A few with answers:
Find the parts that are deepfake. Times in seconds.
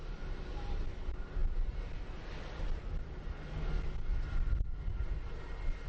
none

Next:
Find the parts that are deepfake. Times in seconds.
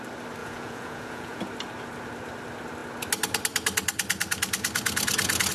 0.4-1.4 (vocoder, Vocos)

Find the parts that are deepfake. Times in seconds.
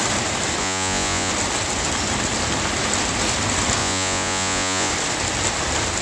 0.6-1.3 (vocoder, Vocos); 3.8-4.9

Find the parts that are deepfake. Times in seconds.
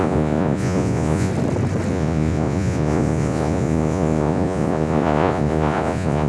0.0-1.3 (vocoder, Vocos); 1.9-6.3